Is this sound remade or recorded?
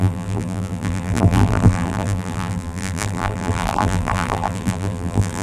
remade